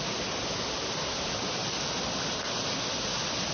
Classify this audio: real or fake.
real